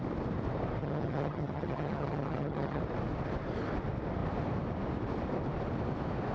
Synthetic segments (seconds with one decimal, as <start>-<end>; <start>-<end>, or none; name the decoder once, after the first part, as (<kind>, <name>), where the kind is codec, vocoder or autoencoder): 0.8-2.8 (vocoder, HiFi-GAN)

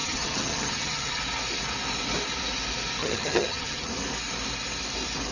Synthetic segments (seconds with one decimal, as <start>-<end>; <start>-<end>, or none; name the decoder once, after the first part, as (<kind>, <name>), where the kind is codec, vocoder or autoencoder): 0.0-1.2 (vocoder, HiFi-GAN); 3.0-3.9

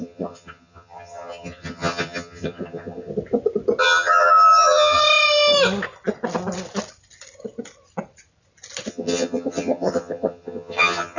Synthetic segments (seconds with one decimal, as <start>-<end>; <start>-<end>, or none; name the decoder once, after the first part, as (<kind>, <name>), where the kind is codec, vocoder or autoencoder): 0.0-3.1 (vocoder, HiFi-GAN); 3.8-5.0; 8.9-11.2

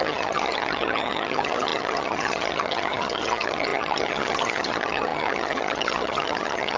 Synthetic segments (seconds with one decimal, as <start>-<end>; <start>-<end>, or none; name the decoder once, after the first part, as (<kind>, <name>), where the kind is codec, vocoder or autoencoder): 0.0-6.8 (vocoder, HiFi-GAN)

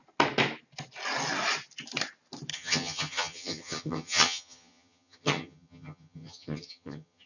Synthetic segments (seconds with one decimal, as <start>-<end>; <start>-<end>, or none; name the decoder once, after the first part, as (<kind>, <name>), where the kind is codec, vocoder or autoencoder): 2.5-7.3 (vocoder, HiFi-GAN)